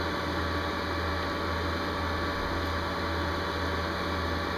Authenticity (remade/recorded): recorded